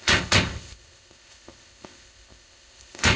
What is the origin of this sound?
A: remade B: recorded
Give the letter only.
A